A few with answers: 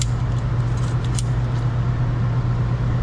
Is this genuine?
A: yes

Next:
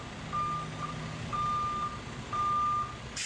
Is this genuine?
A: yes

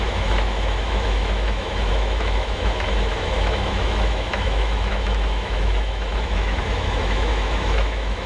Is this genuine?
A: no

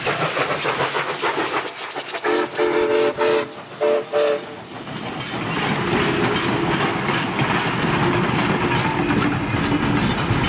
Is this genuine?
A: yes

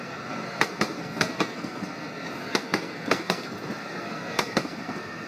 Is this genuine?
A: no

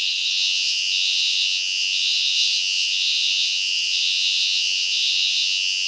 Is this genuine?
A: no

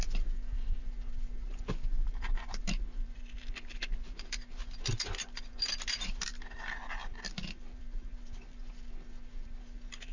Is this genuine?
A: no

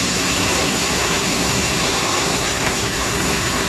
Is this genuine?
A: no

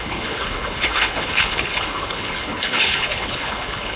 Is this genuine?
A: no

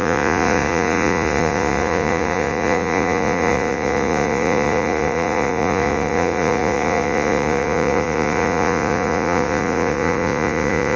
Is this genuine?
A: no